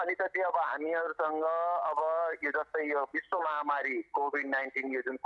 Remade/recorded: recorded